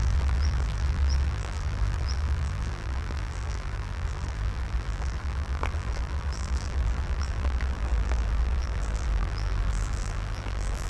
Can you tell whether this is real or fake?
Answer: fake